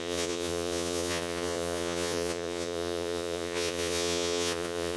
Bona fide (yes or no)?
no